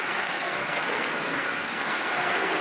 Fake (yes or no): yes